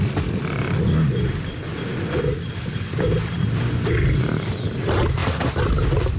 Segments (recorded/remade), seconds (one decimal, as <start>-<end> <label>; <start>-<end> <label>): 0.0-6.2 recorded